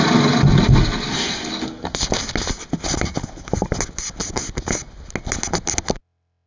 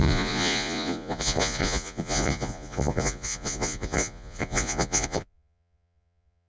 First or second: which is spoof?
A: second